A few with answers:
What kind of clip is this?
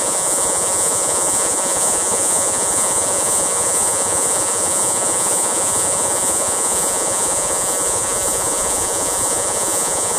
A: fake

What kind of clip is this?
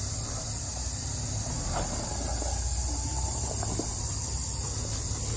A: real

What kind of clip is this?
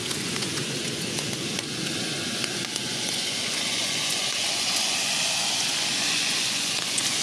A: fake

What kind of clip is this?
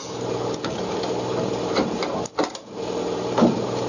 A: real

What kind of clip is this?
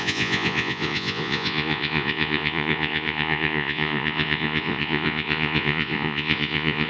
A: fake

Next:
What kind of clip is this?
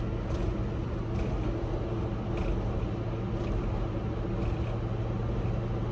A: real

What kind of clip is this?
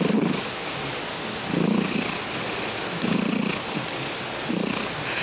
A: real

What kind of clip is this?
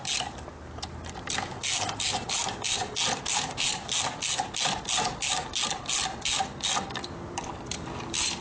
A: real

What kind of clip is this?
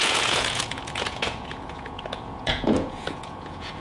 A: fake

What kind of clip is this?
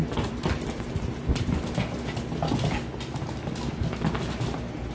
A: real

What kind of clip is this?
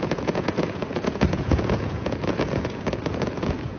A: fake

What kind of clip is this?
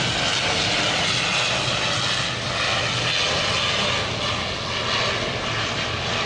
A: real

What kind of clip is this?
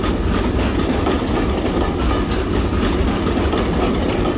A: real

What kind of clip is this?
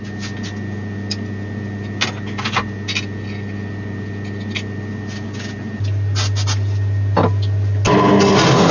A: real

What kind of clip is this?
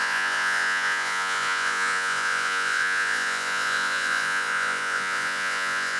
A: fake